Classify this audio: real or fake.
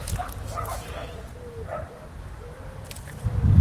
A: real